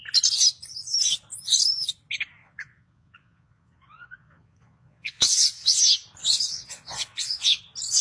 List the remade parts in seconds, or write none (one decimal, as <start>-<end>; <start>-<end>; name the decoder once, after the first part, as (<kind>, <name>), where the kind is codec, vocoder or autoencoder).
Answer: 2.4-5.8 (vocoder, Vocos); 6.2-7.6